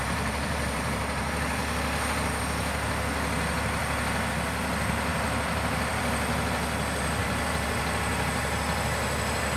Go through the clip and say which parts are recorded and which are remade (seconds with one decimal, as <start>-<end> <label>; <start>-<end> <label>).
0.0-1.2 remade; 1.2-5.1 recorded; 5.1-6.0 remade; 6.0-7.2 recorded; 7.2-7.8 remade; 7.8-9.6 recorded